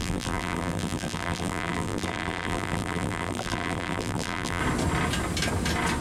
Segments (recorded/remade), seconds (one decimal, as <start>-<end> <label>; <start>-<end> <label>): 0.0-4.6 remade; 4.6-6.0 recorded

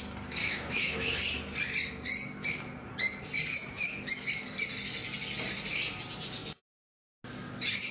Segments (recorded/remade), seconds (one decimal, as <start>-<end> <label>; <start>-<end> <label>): 0.0-0.4 recorded; 0.4-1.2 remade; 1.2-3.5 recorded; 3.5-4.1 remade; 4.1-6.4 recorded; 6.4-7.0 remade; 7.0-7.9 recorded

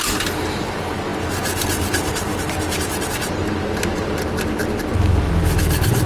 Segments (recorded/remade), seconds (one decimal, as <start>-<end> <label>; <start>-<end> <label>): 0.0-6.1 recorded

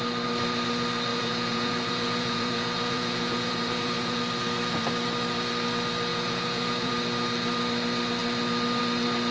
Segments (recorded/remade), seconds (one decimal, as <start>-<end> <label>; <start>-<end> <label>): 0.0-1.1 recorded; 1.1-4.2 remade; 4.2-6.1 recorded; 6.1-6.9 remade; 6.9-9.3 recorded

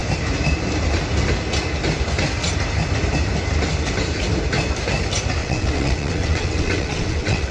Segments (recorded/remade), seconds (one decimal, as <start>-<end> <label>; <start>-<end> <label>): 0.0-5.4 recorded; 5.4-7.5 remade

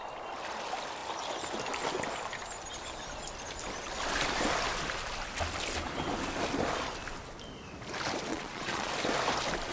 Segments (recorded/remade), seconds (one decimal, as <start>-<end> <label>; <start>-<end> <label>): 0.0-8.3 recorded; 8.3-8.9 remade; 8.9-9.7 recorded